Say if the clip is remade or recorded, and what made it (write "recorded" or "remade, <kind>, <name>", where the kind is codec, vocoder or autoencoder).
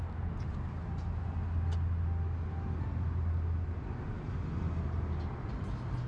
recorded